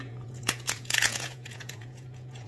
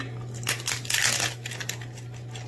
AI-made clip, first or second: first